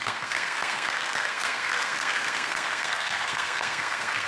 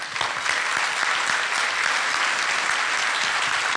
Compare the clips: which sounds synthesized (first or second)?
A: first